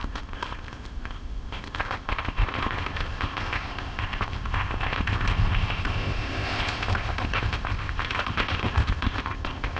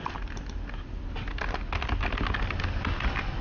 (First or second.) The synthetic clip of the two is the first